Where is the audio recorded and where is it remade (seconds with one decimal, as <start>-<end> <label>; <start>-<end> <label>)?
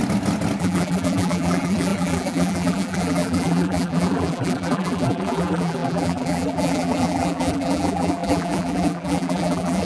0.0-0.6 recorded; 0.6-9.9 remade